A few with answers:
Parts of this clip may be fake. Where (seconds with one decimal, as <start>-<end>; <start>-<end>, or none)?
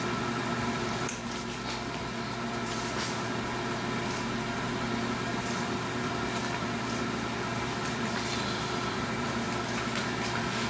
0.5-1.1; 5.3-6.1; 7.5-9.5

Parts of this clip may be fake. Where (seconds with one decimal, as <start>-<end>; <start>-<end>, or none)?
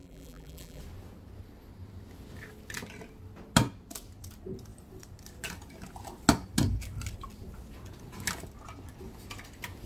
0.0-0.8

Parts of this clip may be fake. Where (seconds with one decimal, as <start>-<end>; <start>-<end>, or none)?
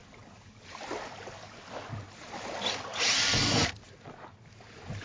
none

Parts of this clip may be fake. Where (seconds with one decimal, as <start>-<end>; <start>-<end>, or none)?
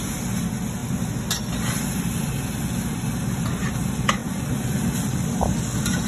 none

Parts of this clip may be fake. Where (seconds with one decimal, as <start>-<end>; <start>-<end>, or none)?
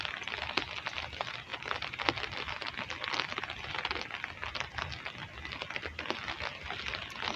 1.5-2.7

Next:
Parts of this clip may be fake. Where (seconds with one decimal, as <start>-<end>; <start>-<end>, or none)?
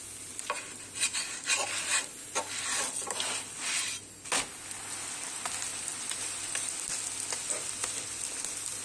5.7-6.9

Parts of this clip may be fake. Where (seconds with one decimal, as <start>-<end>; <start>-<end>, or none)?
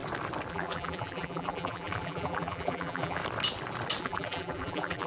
0.5-3.2; 4.0-5.1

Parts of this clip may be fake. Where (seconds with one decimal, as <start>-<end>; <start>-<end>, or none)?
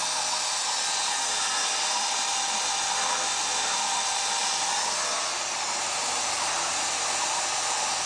0.0-8.1